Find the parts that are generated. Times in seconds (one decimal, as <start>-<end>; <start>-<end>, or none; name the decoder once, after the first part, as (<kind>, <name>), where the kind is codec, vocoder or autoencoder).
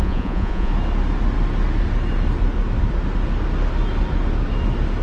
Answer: 0.0-0.7 (vocoder, Vocos)